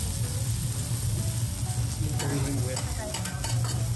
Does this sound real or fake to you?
real